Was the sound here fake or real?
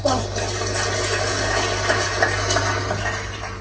real